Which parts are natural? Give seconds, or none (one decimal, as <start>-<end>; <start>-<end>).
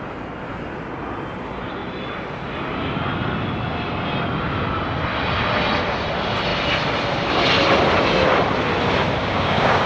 0.0-9.2